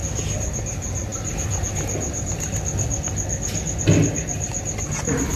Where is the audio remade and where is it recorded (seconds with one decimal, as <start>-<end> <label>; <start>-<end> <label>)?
0.0-5.4 recorded